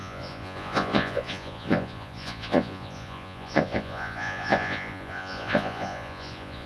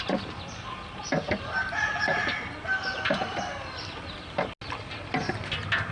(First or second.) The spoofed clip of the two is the first